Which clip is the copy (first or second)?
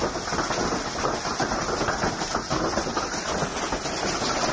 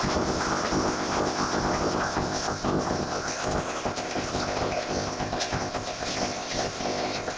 second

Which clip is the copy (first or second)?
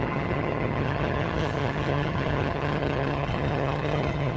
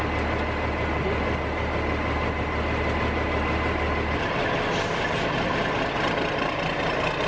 first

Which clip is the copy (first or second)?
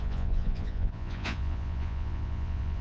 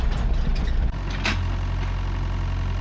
first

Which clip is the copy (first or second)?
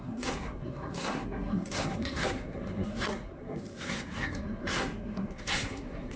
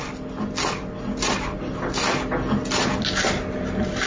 first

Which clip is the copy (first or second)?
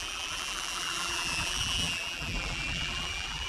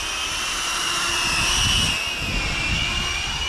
first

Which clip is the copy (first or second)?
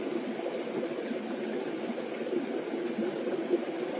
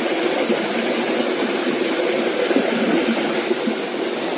first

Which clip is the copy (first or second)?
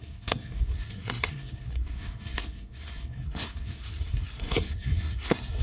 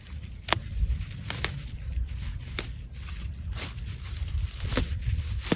first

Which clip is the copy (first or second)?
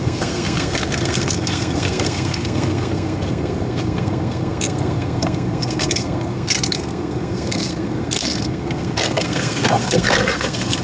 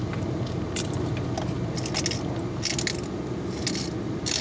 first